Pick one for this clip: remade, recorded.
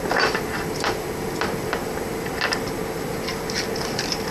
remade